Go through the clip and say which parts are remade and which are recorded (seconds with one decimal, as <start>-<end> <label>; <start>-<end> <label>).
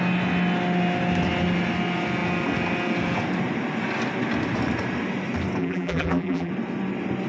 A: 0.0-5.6 recorded; 5.6-6.5 remade; 6.5-7.3 recorded